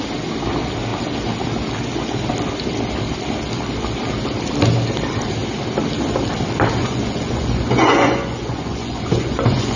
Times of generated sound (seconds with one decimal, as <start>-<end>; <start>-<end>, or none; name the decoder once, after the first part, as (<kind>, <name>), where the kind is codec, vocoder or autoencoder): 6.8-9.8 (vocoder, Vocos)